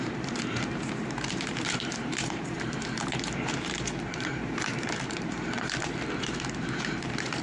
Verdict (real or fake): fake